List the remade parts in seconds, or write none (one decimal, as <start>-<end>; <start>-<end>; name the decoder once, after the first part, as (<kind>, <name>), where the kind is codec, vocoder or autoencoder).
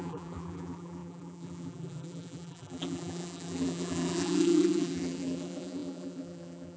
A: 0.0-6.8 (vocoder, BigVGAN v2)